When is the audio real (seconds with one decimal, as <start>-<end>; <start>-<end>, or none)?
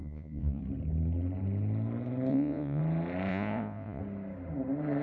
0.6-2.3; 2.8-3.3; 4.0-5.0